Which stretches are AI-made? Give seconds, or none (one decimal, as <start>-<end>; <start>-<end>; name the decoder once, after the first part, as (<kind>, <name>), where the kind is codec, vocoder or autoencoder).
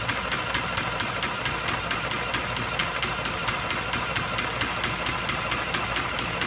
none